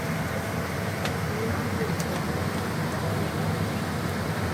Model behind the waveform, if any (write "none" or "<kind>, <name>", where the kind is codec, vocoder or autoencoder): none